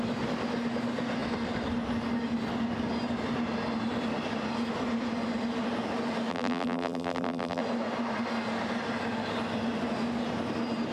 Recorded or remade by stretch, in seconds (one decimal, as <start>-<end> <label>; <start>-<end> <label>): 0.0-6.3 recorded; 6.3-7.6 remade; 7.6-10.9 recorded